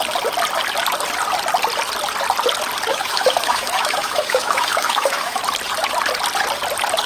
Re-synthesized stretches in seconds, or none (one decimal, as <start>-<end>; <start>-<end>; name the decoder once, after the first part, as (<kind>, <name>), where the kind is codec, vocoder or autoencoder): 2.9-5.4 (autoencoder, DAC-VAE)